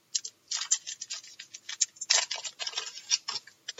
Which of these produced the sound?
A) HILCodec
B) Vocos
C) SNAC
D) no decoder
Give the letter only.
D